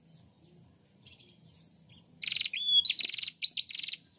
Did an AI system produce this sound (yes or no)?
no